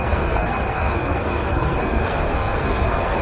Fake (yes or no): yes